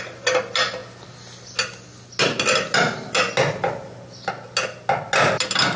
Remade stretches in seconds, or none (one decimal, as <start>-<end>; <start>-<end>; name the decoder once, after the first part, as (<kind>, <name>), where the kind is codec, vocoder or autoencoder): none